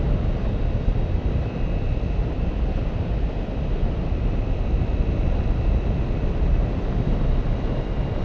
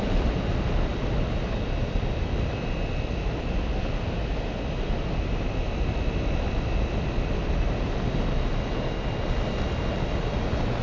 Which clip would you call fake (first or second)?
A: first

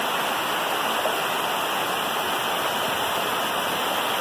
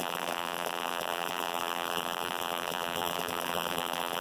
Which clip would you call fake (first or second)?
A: second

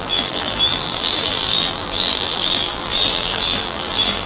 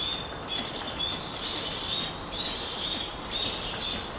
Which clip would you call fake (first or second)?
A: first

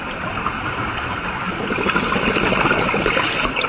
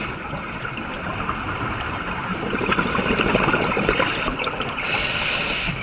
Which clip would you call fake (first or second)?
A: second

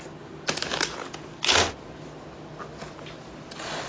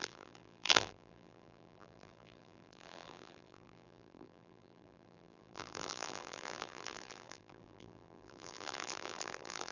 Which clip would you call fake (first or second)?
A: second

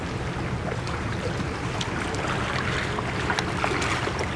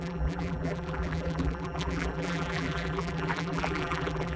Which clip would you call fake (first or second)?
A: second